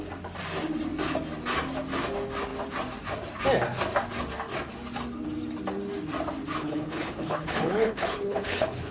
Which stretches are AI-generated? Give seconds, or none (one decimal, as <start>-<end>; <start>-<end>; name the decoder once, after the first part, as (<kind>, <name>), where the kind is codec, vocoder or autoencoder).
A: 6.6-8.9 (codec, HILCodec)